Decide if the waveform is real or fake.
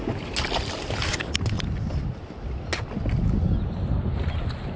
real